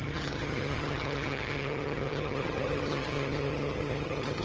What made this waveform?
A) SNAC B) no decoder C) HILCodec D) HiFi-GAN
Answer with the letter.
D